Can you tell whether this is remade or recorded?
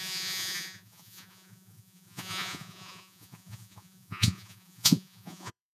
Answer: remade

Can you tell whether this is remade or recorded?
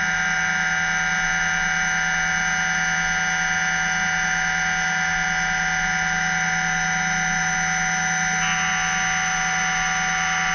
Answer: recorded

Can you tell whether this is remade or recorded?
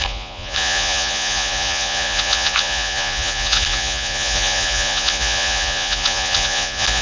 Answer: remade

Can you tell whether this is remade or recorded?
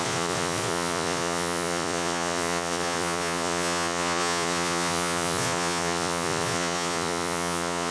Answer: remade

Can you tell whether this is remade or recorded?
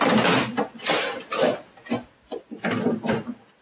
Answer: recorded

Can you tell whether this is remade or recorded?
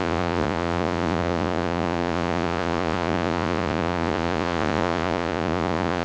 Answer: remade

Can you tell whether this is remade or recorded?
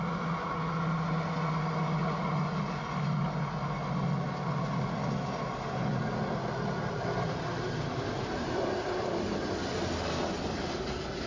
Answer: recorded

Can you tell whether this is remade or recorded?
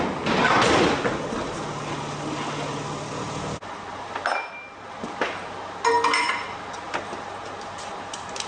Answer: recorded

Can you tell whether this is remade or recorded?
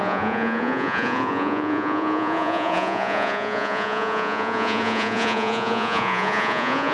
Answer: remade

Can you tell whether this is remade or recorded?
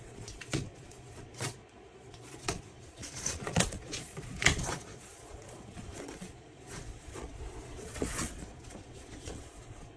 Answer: remade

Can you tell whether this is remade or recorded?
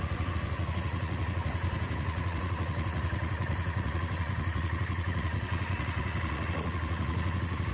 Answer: remade